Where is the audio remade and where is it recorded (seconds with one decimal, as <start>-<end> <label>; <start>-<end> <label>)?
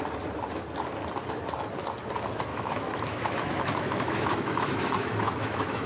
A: 0.0-2.5 recorded; 2.5-5.9 remade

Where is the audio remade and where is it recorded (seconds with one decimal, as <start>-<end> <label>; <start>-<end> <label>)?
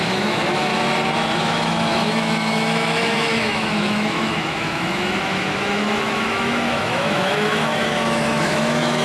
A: 0.0-0.7 remade; 0.7-1.4 recorded; 1.4-9.0 remade